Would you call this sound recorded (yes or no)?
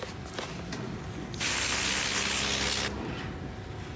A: yes